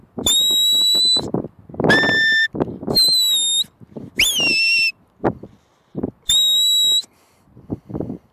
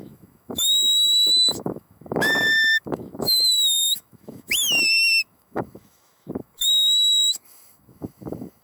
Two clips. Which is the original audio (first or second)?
first